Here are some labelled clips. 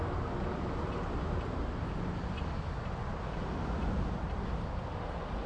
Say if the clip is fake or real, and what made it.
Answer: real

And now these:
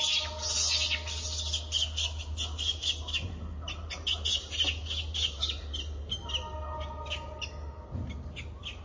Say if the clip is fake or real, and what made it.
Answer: real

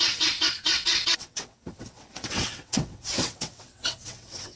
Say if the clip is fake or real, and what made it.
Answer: fake, vocoder, WaveNeXt